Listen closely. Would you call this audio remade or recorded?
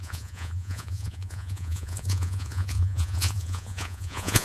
remade